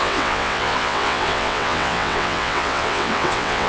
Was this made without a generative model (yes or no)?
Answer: no